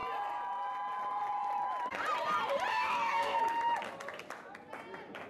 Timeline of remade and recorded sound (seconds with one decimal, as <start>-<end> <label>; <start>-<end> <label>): 0.0-2.7 recorded; 2.7-3.4 remade; 3.4-5.3 recorded

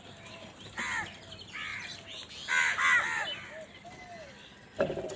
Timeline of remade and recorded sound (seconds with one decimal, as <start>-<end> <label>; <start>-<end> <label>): 0.0-5.2 recorded

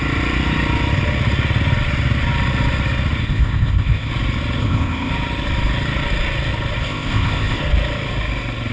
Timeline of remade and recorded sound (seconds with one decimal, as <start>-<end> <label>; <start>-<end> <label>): 0.0-3.2 recorded; 3.2-4.1 remade; 4.1-4.6 recorded; 4.6-5.1 remade; 5.1-6.8 recorded; 6.8-7.6 remade; 7.6-8.7 recorded